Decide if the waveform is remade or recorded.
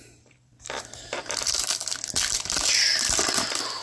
remade